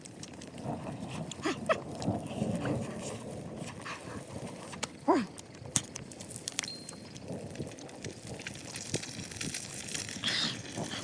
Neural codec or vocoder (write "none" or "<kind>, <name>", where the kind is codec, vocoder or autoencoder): vocoder, BigVGAN v2